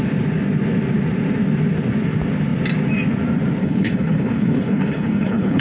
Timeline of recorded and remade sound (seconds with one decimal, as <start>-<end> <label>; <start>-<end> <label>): 0.0-3.6 recorded; 3.6-5.6 remade